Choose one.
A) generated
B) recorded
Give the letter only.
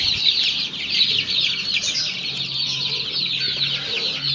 B